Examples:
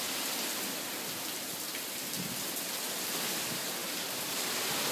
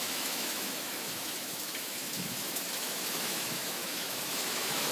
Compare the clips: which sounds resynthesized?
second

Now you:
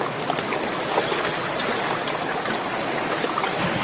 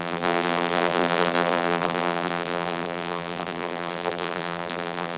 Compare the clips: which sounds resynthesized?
second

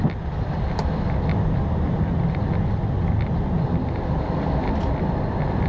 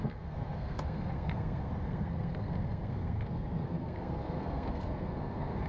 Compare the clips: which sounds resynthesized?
second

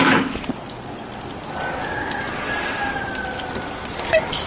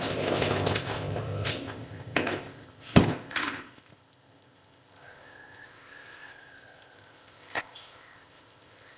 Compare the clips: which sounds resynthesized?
second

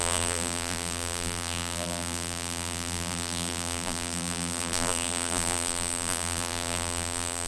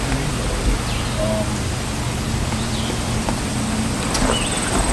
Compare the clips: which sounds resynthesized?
first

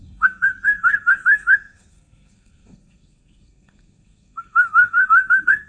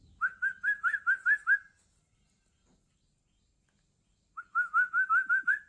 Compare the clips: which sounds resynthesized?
first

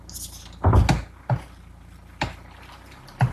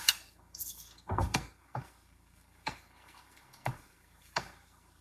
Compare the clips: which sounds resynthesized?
second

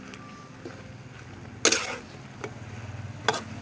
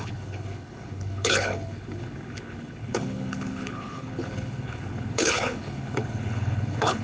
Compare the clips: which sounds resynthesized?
second